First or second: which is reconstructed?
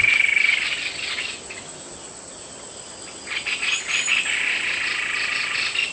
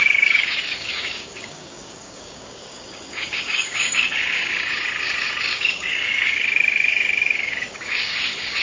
second